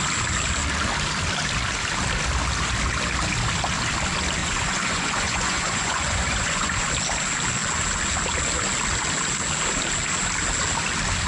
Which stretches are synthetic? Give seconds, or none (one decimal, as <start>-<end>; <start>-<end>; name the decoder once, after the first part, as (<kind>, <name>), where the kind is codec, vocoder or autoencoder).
4.4-6.9 (vocoder, Vocos)